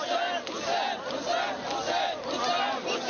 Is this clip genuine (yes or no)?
yes